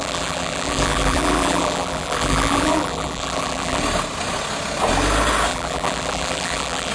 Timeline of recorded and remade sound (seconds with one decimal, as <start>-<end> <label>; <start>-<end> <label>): 0.0-3.8 remade; 3.8-5.5 recorded; 5.5-6.9 remade